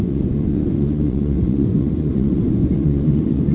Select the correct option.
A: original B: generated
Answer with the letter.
B